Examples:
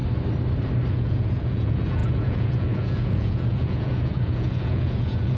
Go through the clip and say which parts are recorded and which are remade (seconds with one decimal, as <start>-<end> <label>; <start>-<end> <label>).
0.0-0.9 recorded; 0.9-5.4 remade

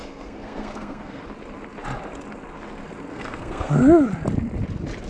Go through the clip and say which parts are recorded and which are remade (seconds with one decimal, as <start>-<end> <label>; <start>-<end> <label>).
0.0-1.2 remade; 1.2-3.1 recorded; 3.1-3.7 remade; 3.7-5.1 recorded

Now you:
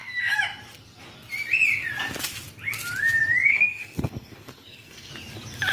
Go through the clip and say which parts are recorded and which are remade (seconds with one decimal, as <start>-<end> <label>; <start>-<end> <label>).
0.0-3.5 recorded; 3.5-5.1 remade; 5.1-5.7 recorded